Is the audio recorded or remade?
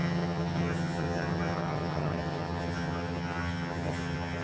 remade